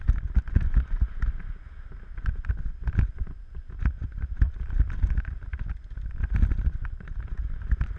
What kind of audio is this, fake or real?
real